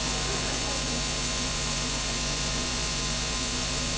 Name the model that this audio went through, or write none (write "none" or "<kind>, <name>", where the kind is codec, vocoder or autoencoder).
vocoder, Vocos